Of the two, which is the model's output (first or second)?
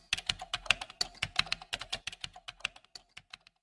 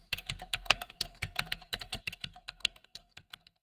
second